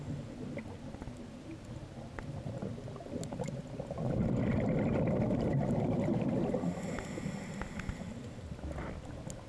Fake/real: real